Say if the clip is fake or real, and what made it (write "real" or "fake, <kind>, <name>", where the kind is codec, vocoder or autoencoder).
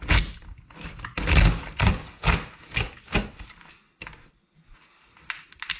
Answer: real